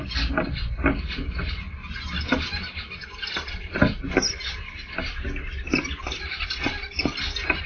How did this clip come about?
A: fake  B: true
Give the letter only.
B